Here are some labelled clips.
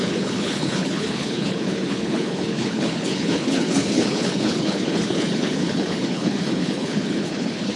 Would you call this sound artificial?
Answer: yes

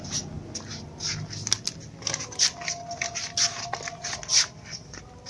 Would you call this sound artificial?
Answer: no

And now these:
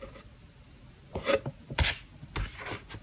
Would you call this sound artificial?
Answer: no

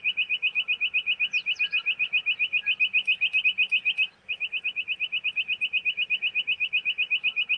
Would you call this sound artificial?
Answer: no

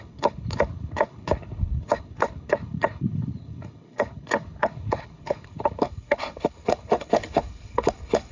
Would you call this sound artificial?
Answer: yes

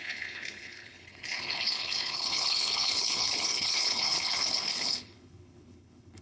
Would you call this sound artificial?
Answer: yes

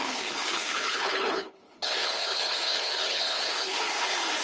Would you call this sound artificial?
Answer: yes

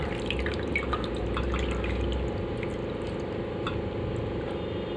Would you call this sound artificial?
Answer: no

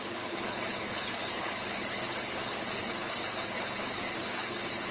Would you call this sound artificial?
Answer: yes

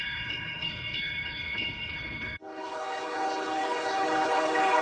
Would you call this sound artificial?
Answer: yes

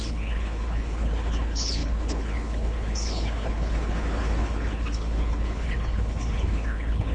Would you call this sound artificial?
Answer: yes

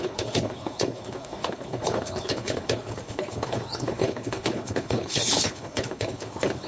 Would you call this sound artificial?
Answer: yes